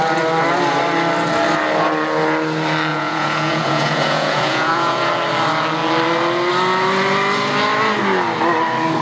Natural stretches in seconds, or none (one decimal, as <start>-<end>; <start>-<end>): 0.0-2.9; 5.1-9.0